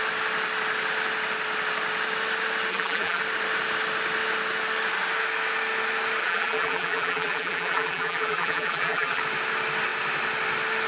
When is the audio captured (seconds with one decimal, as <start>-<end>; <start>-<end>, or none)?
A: 0.0-2.7; 3.2-6.2; 9.2-10.9